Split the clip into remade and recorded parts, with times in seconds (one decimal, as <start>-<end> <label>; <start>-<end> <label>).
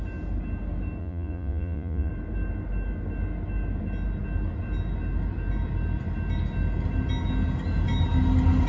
0.0-1.0 recorded; 1.0-2.1 remade; 2.1-8.7 recorded